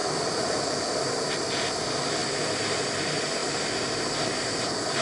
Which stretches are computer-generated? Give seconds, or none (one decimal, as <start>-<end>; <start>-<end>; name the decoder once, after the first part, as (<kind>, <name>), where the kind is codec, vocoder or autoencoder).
0.0-0.6 (vocoder, BigVGAN v2); 2.2-3.0; 3.4-5.0